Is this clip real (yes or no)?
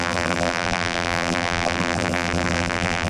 no